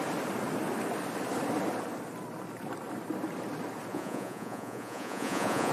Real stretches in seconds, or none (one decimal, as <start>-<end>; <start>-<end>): 0.0-3.9